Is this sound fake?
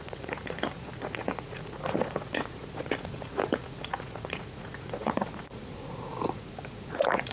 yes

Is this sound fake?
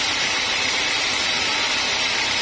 no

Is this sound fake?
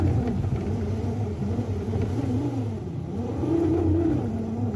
no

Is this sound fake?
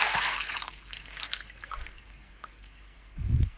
yes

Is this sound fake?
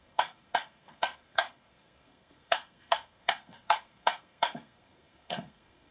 yes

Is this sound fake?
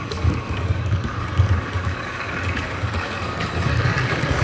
yes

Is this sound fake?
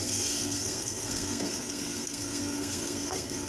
yes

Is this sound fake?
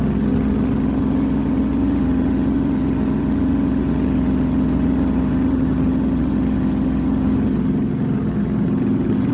yes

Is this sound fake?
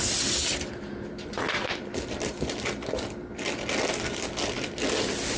no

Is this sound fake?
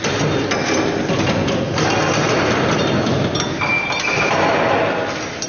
no